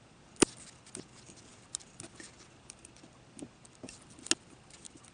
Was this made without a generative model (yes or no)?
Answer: yes